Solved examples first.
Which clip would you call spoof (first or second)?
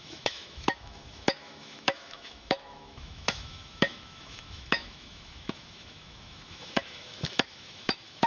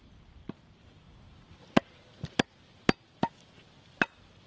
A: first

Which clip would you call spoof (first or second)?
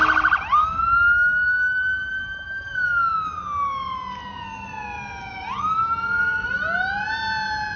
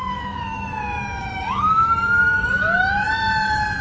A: second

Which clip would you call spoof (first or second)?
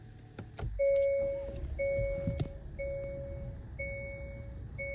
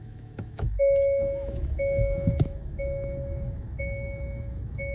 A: second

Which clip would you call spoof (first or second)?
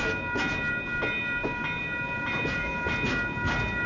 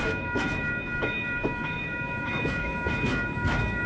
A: second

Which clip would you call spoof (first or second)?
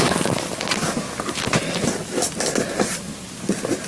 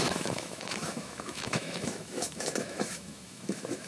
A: second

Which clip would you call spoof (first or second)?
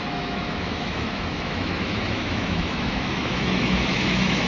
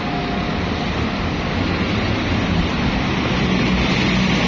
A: first